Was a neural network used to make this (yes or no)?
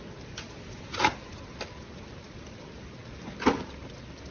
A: no